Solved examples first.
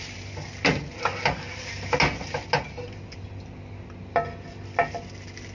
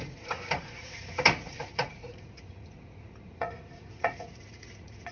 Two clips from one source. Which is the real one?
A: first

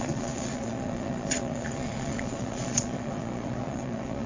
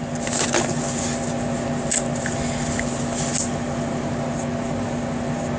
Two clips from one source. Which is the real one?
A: second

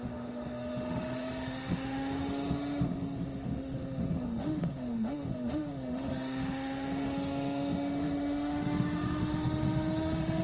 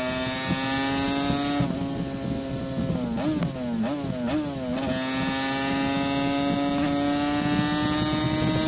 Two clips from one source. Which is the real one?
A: second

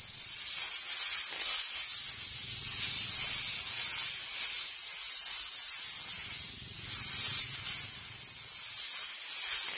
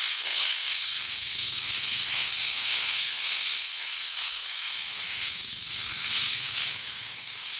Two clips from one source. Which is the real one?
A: first